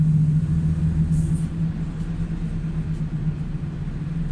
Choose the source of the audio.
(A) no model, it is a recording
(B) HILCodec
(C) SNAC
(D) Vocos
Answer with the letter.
A